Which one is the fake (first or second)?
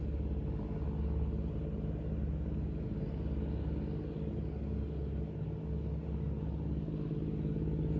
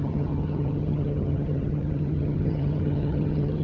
second